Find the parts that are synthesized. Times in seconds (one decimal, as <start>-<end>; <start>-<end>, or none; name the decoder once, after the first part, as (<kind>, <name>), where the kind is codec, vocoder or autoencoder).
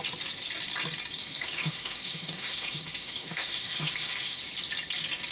1.2-4.4 (autoencoder, DAC-VAE)